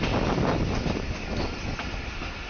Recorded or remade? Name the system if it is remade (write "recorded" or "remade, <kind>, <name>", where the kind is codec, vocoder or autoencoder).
recorded